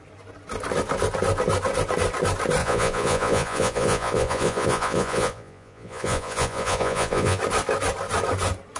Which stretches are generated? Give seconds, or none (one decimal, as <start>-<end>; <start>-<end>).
2.6-7.4